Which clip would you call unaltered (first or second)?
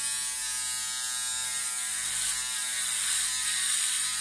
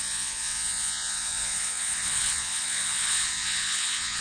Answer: first